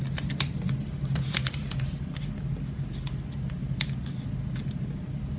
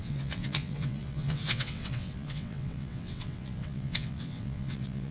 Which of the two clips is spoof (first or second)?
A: second